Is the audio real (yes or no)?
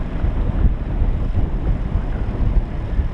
yes